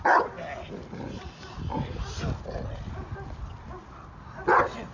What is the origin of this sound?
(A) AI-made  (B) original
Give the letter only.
B